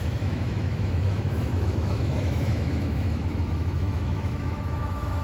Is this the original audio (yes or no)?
no